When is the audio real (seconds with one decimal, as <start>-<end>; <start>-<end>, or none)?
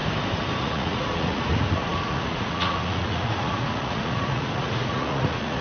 0.0-0.6